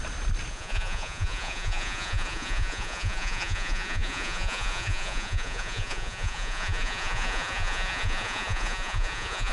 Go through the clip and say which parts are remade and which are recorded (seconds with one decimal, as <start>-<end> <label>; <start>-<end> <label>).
0.0-0.5 recorded; 0.5-9.5 remade